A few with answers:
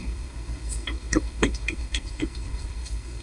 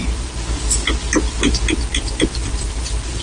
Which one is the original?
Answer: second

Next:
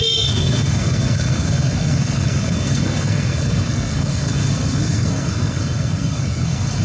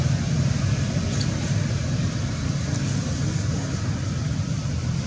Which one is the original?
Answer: second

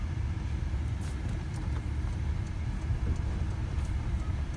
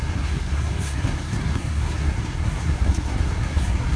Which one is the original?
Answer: first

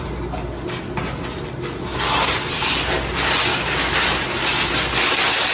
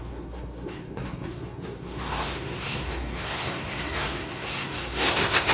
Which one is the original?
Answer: first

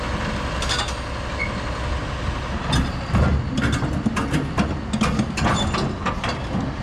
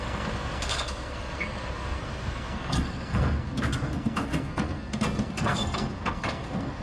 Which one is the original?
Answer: first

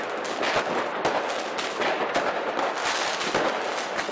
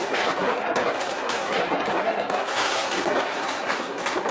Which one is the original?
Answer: first